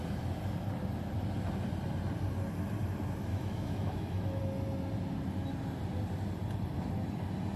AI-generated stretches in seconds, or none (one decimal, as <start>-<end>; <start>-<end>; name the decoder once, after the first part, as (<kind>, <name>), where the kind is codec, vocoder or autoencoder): 3.3-4.4 (autoencoder, DAC-VAE)